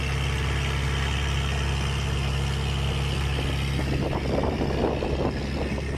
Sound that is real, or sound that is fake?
real